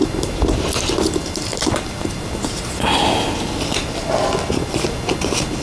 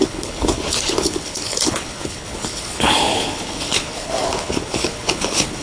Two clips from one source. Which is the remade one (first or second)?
second